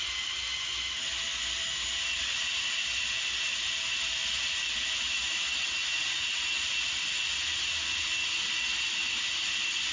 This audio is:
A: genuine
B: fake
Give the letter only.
A